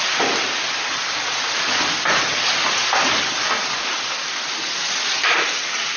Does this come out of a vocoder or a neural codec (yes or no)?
no